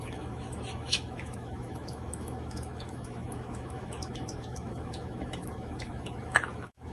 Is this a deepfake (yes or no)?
yes